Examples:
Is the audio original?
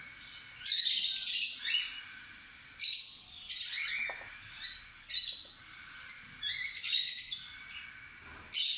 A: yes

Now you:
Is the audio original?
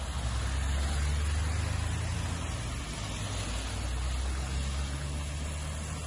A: yes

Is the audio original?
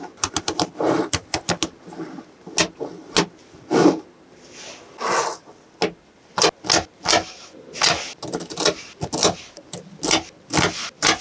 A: yes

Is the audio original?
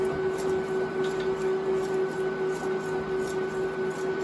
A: yes